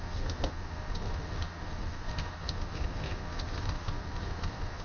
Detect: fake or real fake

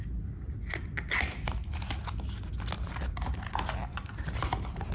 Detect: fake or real real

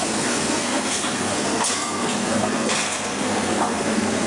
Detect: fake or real fake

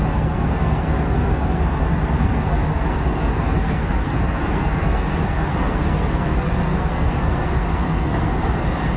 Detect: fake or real fake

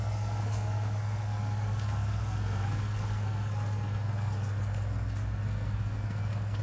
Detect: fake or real fake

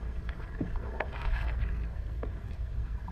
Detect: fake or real fake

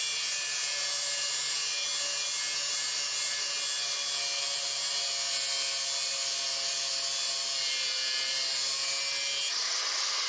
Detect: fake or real real